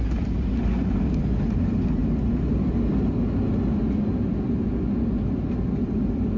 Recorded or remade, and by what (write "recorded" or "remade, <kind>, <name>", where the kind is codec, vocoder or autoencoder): recorded